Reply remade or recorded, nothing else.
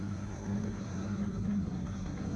remade